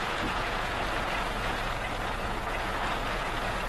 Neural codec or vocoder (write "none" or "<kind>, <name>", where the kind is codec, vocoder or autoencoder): vocoder, Vocos